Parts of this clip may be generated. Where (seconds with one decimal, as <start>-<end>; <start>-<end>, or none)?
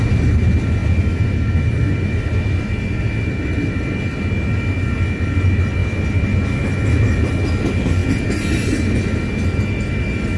none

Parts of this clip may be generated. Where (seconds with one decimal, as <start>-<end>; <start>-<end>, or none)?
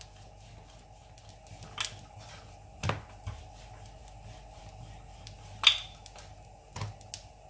none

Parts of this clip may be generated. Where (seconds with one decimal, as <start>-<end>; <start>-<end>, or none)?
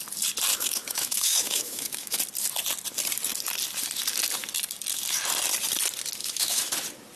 0.5-2.2; 6.2-6.7